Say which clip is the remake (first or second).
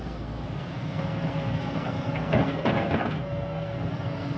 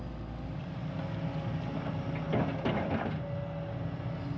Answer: first